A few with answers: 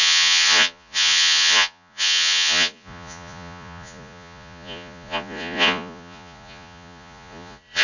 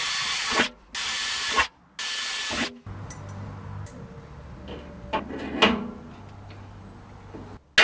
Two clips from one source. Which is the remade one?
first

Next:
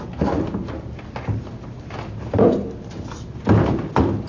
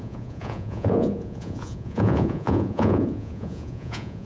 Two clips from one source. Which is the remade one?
second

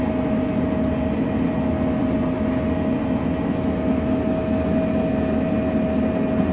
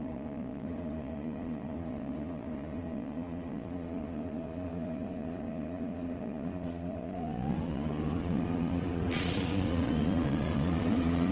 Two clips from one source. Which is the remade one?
second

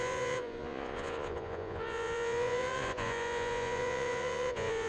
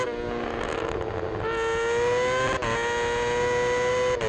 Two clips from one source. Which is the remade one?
first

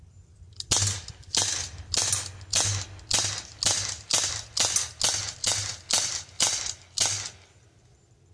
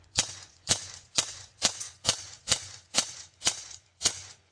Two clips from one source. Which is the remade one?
second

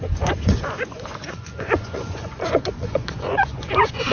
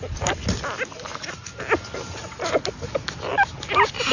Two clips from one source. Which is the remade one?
first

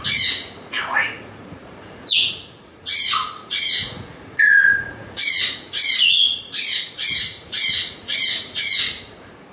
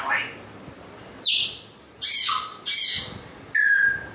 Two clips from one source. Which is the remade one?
first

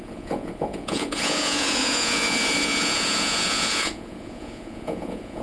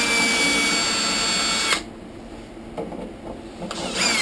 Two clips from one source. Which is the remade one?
first